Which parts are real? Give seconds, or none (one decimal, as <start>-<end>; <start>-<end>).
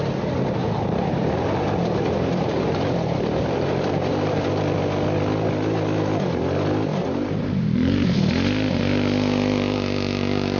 0.0-0.6; 4.5-6.9; 8.3-10.6